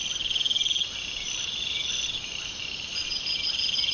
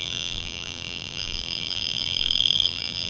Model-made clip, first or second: second